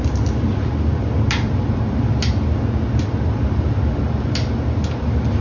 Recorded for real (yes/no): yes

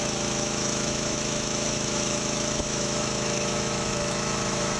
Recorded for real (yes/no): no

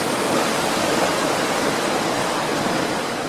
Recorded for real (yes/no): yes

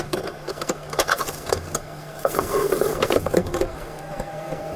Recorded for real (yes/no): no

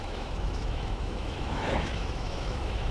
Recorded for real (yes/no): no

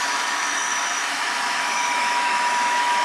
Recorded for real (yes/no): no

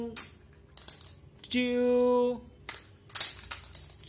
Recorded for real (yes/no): yes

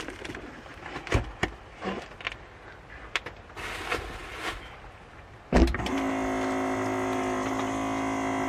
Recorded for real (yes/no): yes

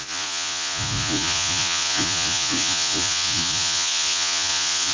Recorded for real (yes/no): no